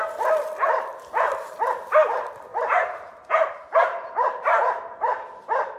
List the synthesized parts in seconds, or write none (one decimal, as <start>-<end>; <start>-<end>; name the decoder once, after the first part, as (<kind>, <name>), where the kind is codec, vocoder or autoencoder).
0.9-5.8 (vocoder, BigVGAN v2)